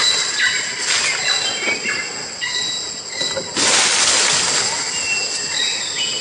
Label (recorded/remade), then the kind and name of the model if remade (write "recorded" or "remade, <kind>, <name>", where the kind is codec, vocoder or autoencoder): recorded